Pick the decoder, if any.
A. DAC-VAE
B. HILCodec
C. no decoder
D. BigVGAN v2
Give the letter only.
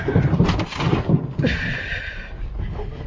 C